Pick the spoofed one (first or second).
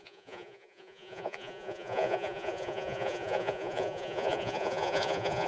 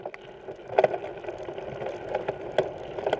first